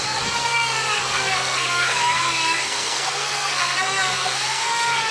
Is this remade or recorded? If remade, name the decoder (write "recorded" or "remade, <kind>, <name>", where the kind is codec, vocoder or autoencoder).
remade, codec, SNAC